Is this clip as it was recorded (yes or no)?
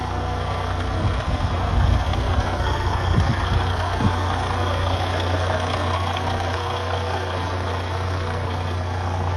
no